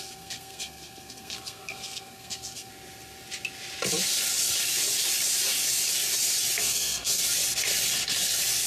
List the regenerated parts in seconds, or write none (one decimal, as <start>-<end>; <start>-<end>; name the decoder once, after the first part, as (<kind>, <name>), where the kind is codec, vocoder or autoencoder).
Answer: 0.0-2.7 (codec, SNAC); 6.6-7.2